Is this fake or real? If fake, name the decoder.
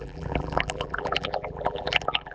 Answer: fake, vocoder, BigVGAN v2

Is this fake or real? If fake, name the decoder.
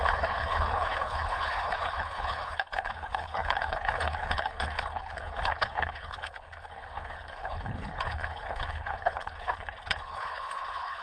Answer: fake, codec, HILCodec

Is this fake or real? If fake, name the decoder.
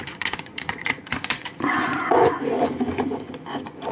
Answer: fake, vocoder, Vocos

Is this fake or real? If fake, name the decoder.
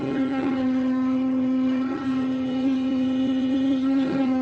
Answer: fake, vocoder, HiFi-GAN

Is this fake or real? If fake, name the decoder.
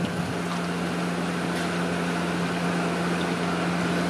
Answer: real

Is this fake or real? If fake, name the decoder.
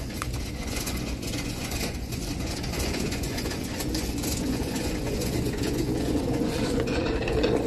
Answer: fake, vocoder, Vocos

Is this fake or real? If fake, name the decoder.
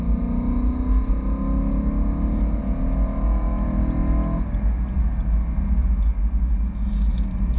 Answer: real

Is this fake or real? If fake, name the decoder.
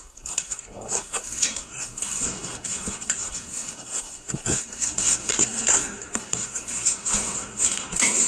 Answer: fake, codec, SNAC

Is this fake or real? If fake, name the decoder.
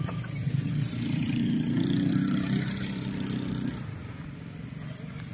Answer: fake, vocoder, BigVGAN v2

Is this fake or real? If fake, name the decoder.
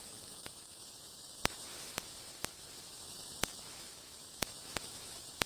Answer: fake, autoencoder, DAC-VAE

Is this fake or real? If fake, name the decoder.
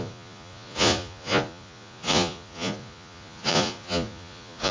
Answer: fake, vocoder, Vocos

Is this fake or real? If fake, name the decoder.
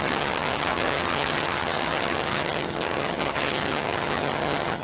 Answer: fake, vocoder, HiFi-GAN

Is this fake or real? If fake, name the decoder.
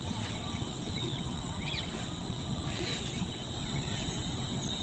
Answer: fake, vocoder, WaveNeXt